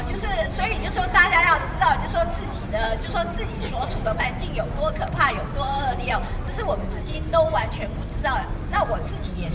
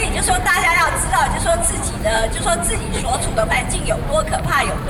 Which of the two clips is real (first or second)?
first